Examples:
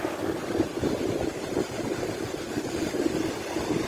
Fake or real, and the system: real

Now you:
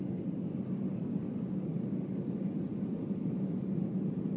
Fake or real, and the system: real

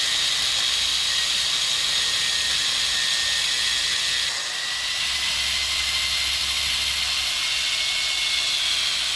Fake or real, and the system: real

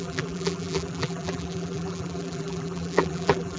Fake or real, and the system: fake, vocoder, BigVGAN v2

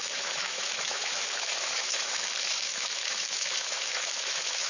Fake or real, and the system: fake, autoencoder, DAC-VAE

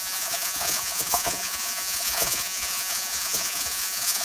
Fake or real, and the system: fake, vocoder, Vocos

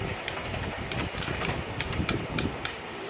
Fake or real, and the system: fake, vocoder, BigVGAN v2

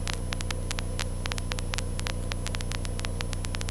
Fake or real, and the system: real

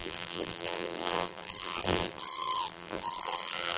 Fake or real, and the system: fake, vocoder, BigVGAN v2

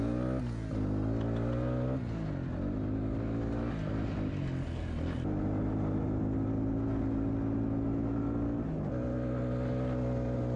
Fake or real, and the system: real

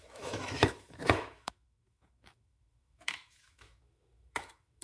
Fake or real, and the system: fake, autoencoder, DAC-VAE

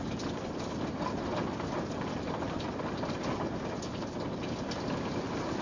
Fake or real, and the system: real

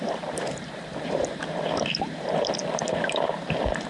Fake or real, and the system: fake, vocoder, BigVGAN v2